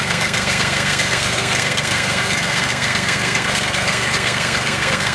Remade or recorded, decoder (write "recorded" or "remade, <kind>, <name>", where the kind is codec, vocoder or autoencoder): remade, codec, SNAC